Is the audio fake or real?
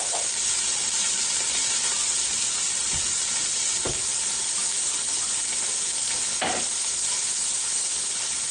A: real